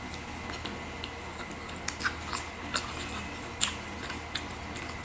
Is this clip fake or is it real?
real